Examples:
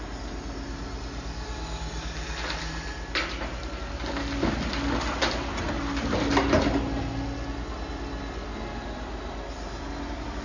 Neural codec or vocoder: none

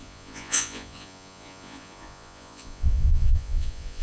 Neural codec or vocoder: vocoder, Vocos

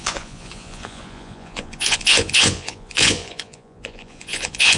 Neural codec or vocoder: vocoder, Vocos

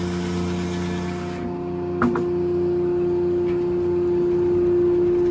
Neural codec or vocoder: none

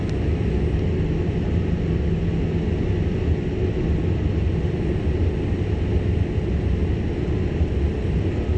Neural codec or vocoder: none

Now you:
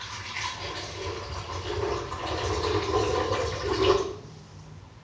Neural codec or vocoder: none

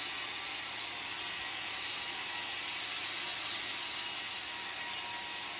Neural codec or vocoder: none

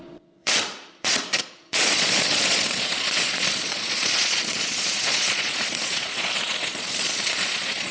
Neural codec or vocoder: vocoder, Vocos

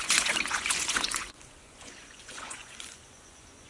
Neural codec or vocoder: vocoder, Vocos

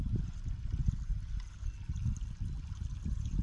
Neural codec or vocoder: none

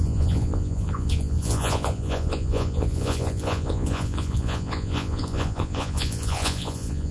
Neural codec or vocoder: vocoder, Vocos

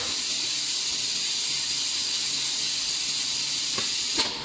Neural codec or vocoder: none